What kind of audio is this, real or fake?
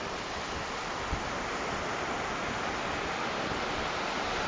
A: real